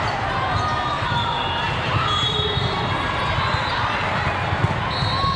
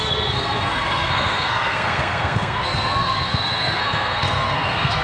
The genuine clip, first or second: first